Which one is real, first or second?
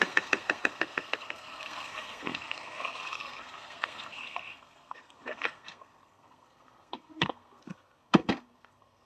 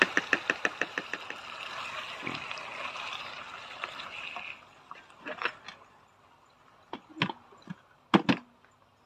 second